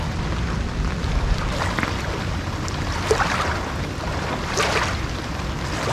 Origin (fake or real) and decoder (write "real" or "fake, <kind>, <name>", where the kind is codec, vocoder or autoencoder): real